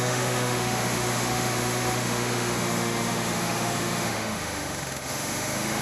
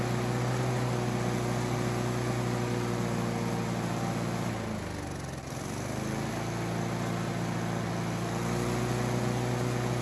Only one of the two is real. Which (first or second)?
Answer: second